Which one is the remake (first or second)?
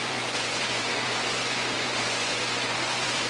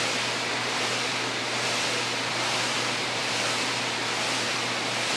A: first